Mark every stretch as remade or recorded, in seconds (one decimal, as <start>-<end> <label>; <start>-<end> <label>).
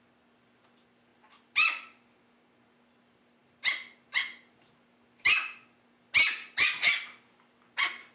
0.0-8.1 recorded